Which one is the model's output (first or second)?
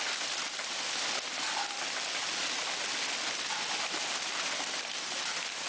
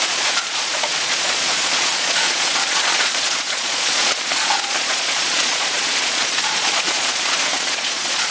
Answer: second